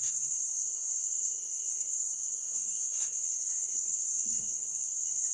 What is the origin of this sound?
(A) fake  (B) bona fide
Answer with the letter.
A